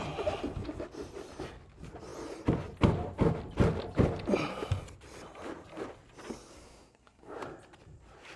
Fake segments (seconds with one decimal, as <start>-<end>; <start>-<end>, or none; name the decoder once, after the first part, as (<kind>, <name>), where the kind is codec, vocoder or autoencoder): 6.5-7.4 (codec, SNAC)